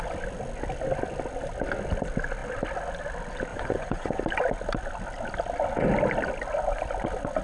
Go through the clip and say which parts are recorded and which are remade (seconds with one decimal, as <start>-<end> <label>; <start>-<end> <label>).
0.0-3.5 recorded; 3.5-4.2 remade; 4.2-7.4 recorded